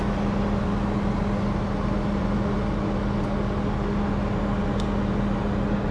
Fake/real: real